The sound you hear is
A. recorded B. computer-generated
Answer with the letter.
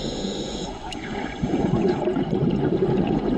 B